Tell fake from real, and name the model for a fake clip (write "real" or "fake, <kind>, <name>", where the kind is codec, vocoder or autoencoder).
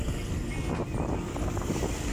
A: real